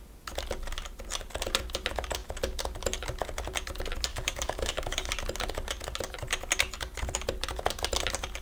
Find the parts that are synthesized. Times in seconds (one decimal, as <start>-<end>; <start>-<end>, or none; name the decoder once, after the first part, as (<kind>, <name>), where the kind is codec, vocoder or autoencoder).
4.1-5.1 (codec, DAC)